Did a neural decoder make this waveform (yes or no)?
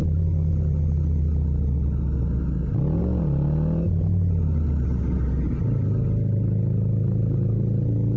no